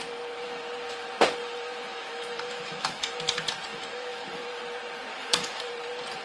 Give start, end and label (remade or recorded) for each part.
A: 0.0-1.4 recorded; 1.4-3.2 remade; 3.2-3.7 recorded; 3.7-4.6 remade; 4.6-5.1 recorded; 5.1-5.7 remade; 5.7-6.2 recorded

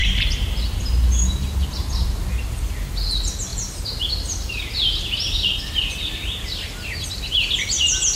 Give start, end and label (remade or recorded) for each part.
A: 0.0-8.2 recorded

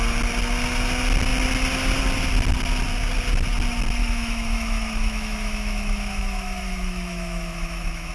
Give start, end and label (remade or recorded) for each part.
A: 0.0-4.0 recorded; 4.0-8.1 remade

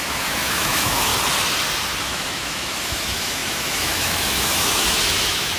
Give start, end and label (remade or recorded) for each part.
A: 0.0-1.1 remade; 1.1-2.0 recorded; 2.0-5.6 remade

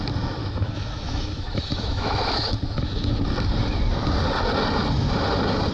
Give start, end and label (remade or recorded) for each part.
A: 0.0-0.4 recorded; 0.4-3.2 remade; 3.2-5.7 recorded